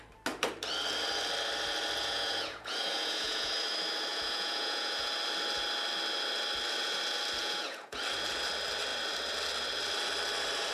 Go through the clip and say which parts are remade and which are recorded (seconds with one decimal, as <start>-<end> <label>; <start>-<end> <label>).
0.0-2.0 recorded; 2.0-3.5 remade; 3.5-4.1 recorded; 4.1-5.1 remade; 5.1-7.4 recorded; 7.4-8.0 remade; 8.0-10.7 recorded